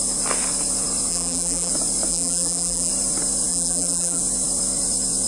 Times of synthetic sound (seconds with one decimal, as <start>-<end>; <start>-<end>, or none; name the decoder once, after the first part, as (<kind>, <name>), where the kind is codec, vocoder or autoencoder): 1.1-1.7 (vocoder, BigVGAN v2); 2.1-2.9; 3.5-4.2